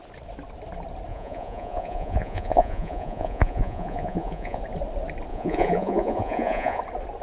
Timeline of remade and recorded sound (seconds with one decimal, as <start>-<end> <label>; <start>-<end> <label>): 0.0-1.1 recorded; 1.1-4.6 remade; 4.6-5.3 recorded; 5.3-6.8 remade; 6.8-7.2 recorded